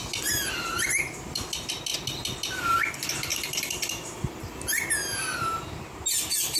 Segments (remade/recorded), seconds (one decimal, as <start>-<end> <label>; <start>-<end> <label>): 0.0-6.6 recorded